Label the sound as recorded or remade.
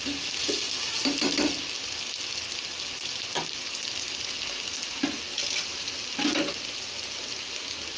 recorded